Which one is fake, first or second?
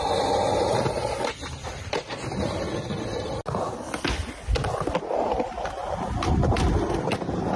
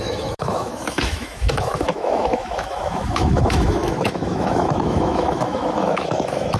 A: second